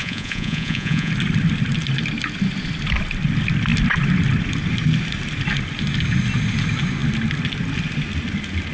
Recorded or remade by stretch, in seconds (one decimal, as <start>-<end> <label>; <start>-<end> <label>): 0.0-1.1 remade; 1.1-8.7 recorded